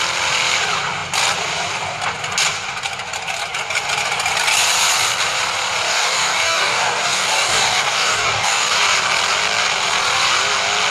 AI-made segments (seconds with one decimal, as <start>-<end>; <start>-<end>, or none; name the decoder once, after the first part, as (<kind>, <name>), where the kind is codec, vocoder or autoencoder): 5.9-8.7 (codec, DAC)